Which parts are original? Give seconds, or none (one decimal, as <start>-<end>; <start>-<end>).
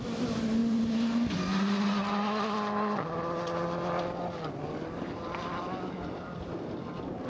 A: 0.0-7.3